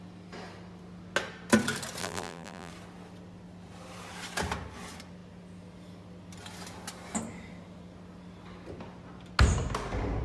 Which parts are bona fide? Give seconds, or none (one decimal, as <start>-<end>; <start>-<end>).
0.0-2.0; 2.7-10.2